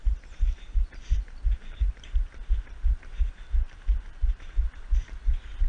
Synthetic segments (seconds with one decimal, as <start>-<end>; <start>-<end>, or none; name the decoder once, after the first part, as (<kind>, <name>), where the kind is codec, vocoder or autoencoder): 0.0-5.7 (vocoder, BigVGAN v2)